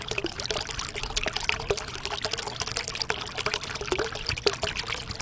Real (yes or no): no